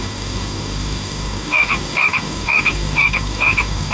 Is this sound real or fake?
fake